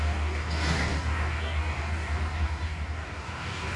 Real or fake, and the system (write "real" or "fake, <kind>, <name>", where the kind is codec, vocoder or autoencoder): fake, codec, DAC